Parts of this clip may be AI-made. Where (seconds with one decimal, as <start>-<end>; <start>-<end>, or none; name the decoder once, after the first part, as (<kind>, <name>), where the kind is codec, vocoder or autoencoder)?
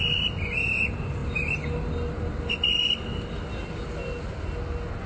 none